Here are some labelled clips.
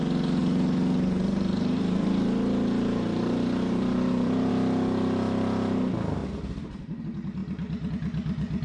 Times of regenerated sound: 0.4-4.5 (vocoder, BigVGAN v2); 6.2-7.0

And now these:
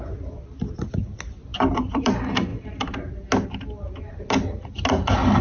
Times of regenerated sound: 1.5-2.1 (vocoder, BigVGAN v2)

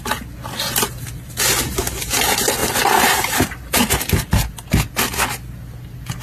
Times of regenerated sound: 2.6-3.9 (vocoder, BigVGAN v2)

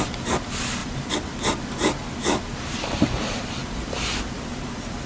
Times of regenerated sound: none

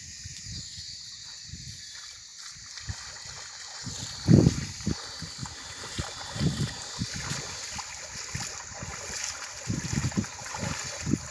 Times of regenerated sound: 5.4-6.9 (vocoder, BigVGAN v2); 8.9-10.8

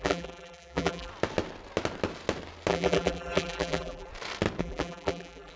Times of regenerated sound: 0.0-1.1 (vocoder, BigVGAN v2); 2.7-4.1; 4.6-5.6

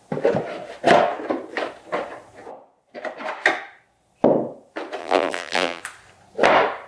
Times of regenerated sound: 5.0-5.8 (vocoder, BigVGAN v2)